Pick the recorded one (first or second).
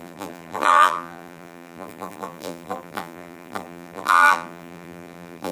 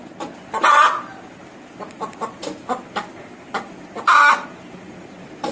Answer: second